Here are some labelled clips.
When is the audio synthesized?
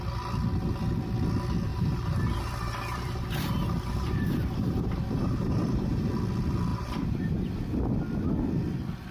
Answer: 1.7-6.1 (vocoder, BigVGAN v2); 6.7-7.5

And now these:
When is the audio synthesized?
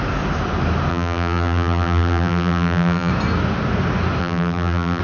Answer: 0.9-3.1 (vocoder, BigVGAN v2); 4.2-5.0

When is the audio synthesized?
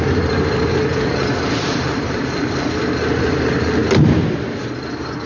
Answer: 0.0-3.8 (vocoder, BigVGAN v2)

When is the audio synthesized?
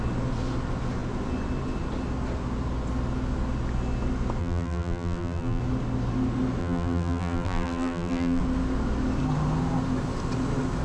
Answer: 4.4-5.6 (vocoder, BigVGAN v2); 6.6-8.4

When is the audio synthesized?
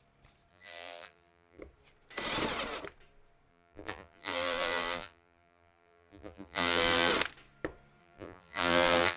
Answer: 0.5-1.6 (vocoder, BigVGAN v2); 3.5-7.1; 8.0-9.2